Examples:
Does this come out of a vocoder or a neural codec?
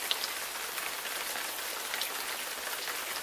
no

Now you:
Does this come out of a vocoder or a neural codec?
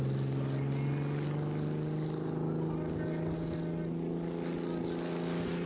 no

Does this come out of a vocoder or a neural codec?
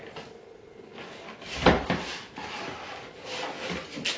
no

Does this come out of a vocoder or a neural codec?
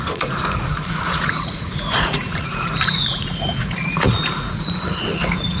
yes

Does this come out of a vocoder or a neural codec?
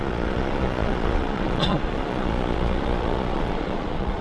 yes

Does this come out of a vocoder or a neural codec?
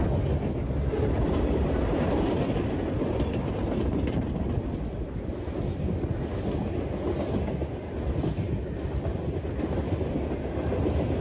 no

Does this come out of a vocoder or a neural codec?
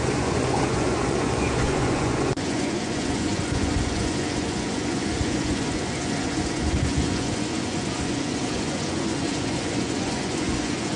yes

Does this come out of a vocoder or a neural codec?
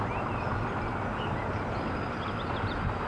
no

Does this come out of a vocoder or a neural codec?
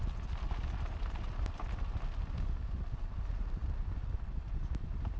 no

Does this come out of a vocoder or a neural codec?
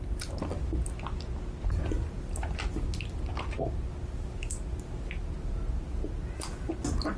no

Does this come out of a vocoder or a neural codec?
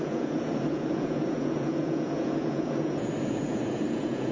yes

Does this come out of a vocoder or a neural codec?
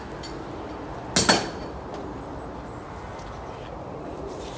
no